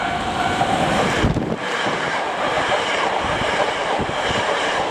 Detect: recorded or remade remade